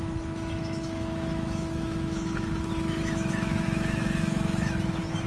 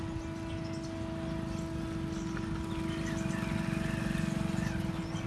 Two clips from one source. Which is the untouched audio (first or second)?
second